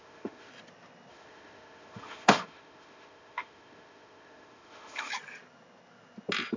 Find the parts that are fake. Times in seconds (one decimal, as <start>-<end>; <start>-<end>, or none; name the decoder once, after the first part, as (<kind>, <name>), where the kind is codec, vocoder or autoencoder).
0.0-0.5 (autoencoder, DAC-VAE); 1.1-5.1